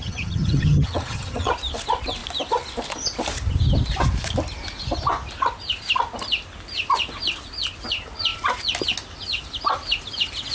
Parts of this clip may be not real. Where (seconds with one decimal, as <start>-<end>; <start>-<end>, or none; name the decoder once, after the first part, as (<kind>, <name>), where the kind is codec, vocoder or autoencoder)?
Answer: 0.0-1.5 (vocoder, HiFi-GAN)